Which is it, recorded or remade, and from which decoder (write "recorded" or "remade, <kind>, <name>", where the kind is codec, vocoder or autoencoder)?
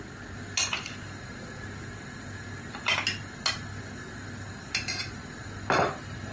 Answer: recorded